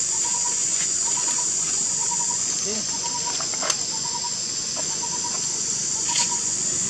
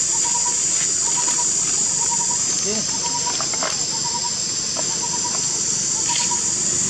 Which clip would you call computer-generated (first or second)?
first